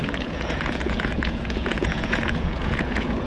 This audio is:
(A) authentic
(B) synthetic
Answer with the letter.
B